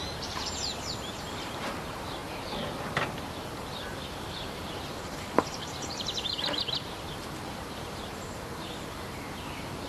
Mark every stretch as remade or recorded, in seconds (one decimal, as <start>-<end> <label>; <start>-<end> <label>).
0.0-2.2 remade; 2.2-3.5 recorded; 3.5-9.9 remade